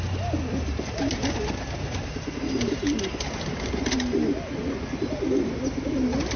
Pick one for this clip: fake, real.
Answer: real